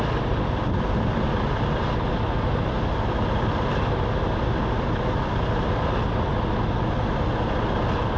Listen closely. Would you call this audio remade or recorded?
recorded